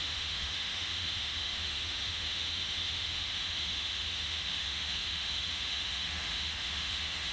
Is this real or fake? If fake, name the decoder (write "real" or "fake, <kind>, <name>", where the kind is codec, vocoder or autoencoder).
fake, autoencoder, DAC-VAE